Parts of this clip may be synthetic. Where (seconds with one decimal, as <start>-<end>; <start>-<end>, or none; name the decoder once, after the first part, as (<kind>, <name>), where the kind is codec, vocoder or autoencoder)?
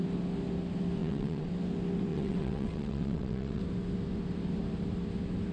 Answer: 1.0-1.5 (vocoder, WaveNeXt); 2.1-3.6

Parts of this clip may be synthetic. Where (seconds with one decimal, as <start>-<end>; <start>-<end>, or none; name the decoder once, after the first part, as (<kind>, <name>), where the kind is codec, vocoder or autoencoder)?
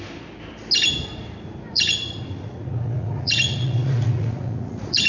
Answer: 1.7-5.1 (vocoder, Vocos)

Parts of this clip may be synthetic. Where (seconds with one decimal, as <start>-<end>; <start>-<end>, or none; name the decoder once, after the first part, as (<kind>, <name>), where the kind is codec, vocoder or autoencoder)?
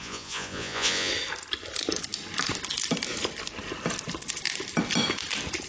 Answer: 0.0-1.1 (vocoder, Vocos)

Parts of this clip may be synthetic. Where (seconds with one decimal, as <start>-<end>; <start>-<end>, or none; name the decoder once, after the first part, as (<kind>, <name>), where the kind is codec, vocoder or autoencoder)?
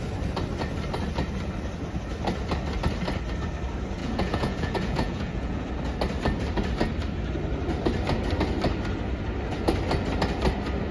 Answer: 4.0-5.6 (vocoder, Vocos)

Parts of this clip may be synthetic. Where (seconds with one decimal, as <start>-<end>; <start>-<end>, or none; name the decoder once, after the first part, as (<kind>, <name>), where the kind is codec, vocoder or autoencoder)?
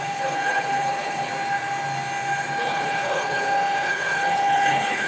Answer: 0.0-1.3 (codec, HILCodec); 2.6-5.1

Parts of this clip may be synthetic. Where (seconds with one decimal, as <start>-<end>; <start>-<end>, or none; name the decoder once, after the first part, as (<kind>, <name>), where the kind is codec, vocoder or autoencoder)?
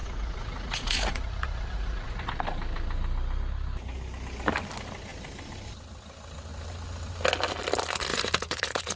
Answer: 0.0-2.3 (vocoder, Vocos); 8.1-9.0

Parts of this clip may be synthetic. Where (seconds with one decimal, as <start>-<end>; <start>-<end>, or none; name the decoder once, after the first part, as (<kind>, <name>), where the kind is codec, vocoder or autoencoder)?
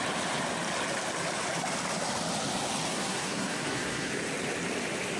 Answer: 2.9-4.1 (codec, SNAC)